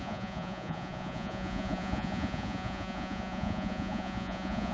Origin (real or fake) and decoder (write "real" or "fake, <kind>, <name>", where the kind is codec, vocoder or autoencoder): fake, vocoder, Vocos